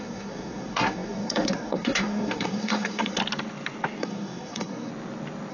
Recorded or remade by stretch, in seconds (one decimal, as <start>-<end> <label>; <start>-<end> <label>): 0.0-3.2 remade; 3.2-4.0 recorded; 4.0-4.9 remade; 4.9-5.5 recorded